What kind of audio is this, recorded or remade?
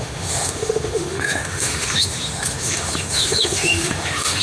remade